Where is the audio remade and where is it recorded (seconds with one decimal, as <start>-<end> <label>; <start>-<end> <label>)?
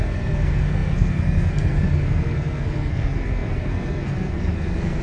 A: 0.0-5.0 remade